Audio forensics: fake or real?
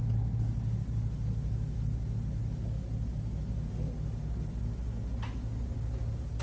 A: real